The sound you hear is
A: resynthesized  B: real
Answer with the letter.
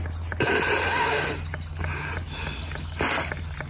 B